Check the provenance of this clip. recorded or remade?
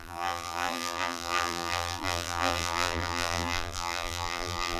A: remade